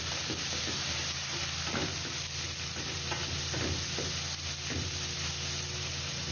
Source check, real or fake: real